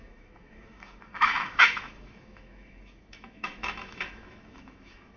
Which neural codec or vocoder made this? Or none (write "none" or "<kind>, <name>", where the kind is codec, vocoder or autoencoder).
autoencoder, DAC-VAE